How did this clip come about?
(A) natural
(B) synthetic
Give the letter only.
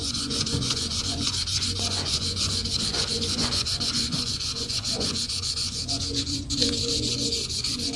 B